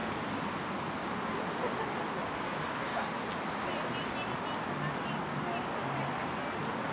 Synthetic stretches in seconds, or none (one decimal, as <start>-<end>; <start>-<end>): 2.1-2.9